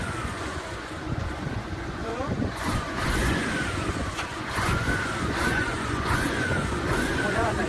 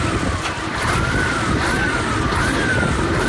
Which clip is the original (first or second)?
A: second